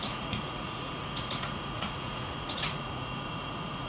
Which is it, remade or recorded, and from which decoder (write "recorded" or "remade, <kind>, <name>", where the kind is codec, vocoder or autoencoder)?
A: remade, vocoder, Vocos